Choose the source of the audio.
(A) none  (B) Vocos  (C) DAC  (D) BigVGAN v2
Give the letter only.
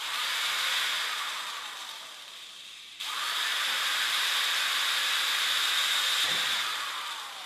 D